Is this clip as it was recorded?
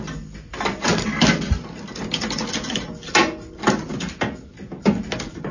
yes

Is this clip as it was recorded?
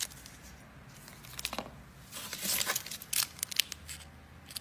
yes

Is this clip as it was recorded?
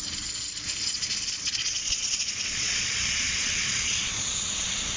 no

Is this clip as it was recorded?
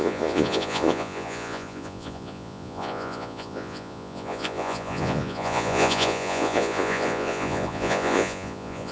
no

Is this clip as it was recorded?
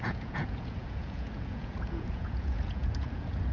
no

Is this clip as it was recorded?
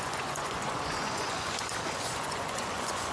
no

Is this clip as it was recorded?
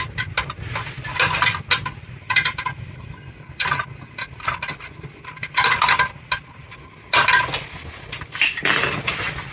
yes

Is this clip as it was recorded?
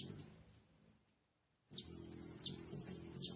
yes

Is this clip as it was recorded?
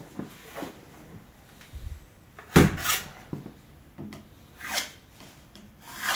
yes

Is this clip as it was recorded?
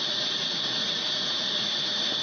no